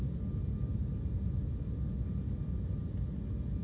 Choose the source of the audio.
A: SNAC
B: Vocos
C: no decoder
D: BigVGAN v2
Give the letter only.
C